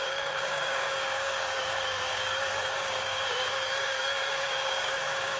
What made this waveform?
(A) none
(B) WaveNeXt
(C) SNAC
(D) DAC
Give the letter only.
D